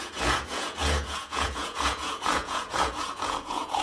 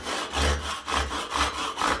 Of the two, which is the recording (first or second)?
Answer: second